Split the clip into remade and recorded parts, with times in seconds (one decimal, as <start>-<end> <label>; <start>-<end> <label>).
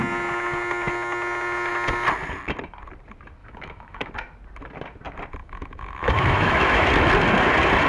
0.0-3.4 recorded; 3.4-4.1 remade; 4.1-5.4 recorded; 5.4-6.9 remade; 6.9-7.9 recorded